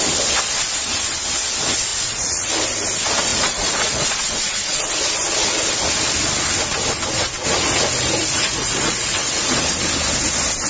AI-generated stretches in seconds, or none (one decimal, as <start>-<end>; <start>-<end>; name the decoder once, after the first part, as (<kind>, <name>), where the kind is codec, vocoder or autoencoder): 1.9-2.5 (vocoder, Vocos); 3.3-4.9; 8.2-9.7